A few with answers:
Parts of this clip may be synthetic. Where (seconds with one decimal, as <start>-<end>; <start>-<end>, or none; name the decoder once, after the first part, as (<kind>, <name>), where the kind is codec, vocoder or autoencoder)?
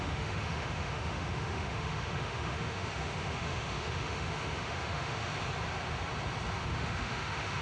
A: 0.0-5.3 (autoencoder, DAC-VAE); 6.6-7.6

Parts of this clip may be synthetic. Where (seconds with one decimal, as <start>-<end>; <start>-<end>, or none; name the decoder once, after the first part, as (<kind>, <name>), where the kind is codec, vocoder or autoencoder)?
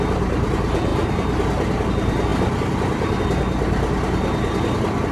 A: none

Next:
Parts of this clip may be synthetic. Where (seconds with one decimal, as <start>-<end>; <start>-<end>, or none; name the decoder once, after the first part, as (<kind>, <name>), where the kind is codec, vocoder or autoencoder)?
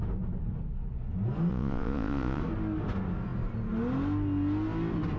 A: 1.5-2.4 (vocoder, Vocos)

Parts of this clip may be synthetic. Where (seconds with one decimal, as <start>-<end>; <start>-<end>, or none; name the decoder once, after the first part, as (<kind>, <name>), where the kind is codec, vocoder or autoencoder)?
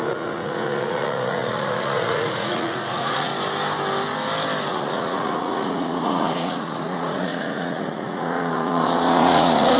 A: 0.0-3.3 (vocoder, Vocos); 4.7-9.8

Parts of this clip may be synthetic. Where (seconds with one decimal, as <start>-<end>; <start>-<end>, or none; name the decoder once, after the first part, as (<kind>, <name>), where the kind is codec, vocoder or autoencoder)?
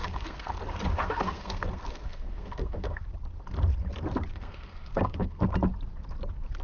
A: 0.0-0.6 (codec, SNAC); 1.0-3.0; 4.3-5.4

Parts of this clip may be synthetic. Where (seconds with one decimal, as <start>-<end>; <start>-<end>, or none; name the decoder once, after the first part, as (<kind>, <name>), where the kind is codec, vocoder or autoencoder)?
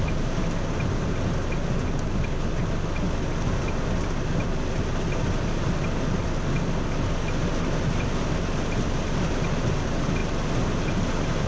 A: none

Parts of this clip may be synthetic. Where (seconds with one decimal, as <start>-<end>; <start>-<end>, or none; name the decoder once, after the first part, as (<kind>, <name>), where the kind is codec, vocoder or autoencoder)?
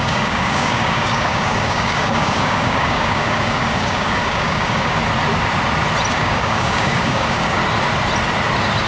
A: 0.0-5.0 (codec, DAC); 6.1-7.6